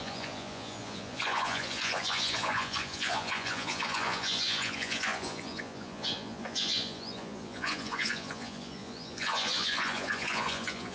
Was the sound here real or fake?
fake